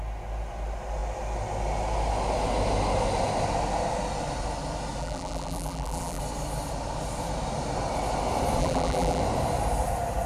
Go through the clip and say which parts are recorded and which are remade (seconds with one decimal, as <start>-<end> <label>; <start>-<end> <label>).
0.0-5.0 recorded; 5.0-6.2 remade; 6.2-8.6 recorded; 8.6-9.2 remade; 9.2-10.3 recorded